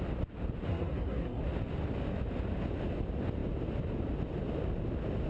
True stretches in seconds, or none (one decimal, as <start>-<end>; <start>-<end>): 0.0-0.7; 1.4-5.3